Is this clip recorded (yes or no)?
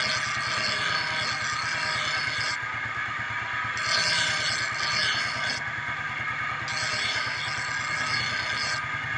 yes